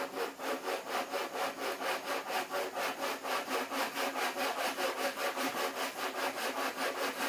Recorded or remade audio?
recorded